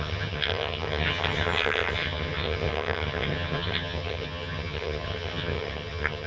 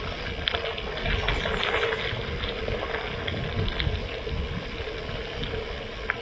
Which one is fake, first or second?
first